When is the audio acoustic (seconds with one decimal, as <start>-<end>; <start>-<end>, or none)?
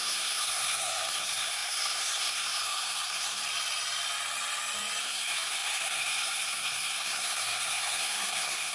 3.4-5.0